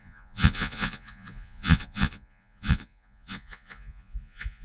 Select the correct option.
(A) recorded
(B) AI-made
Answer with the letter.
B